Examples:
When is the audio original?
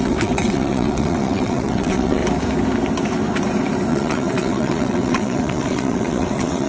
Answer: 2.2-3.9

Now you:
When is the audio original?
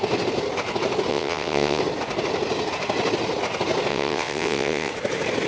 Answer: 0.0-1.1; 1.8-3.9; 4.9-5.5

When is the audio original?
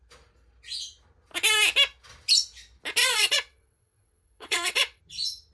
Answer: 0.0-3.0; 5.0-5.5